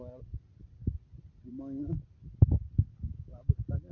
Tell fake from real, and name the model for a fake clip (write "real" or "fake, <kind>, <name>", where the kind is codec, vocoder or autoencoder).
real